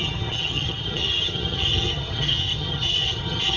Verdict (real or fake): fake